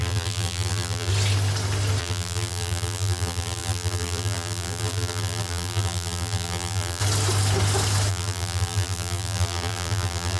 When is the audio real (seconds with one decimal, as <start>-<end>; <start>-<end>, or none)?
1.1-2.0; 7.0-8.1